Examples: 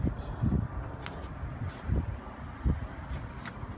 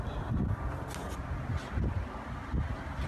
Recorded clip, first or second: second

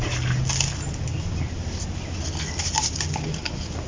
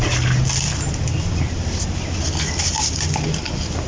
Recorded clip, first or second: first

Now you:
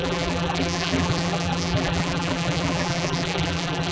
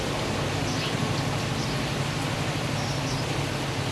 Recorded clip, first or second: second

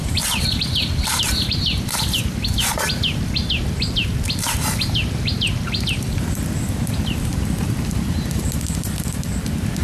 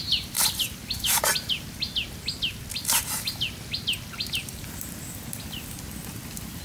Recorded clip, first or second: second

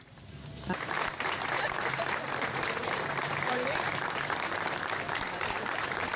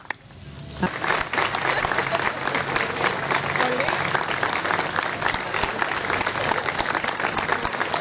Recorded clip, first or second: second